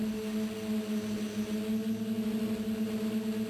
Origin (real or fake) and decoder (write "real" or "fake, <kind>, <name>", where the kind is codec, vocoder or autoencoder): real